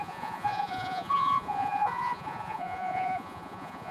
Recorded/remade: remade